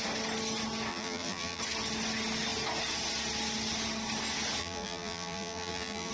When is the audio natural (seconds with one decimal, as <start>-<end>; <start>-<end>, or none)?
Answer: 0.0-0.9; 1.6-4.6